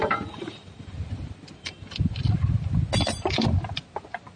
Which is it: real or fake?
real